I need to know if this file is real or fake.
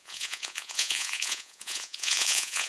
fake